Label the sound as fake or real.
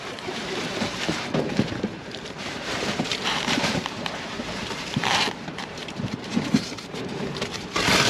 fake